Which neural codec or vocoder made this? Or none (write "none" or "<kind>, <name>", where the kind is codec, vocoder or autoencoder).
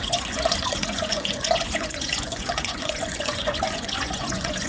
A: vocoder, Vocos